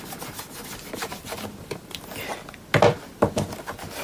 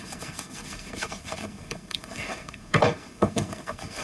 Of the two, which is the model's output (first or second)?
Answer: second